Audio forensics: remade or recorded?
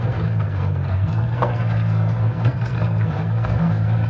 remade